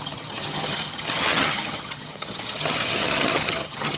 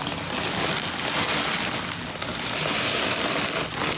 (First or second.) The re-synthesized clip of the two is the first